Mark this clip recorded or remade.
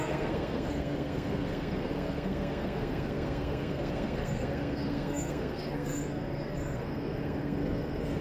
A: remade